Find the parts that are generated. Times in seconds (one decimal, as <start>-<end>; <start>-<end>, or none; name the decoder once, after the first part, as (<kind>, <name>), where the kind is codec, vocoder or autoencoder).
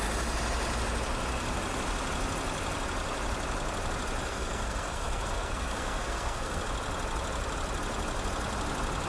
4.2-6.6 (codec, SNAC)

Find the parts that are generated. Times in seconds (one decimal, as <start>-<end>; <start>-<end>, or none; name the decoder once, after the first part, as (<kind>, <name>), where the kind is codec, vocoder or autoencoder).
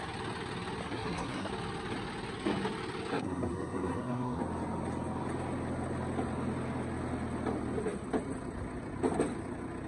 0.8-1.5 (codec, SNAC); 3.1-4.4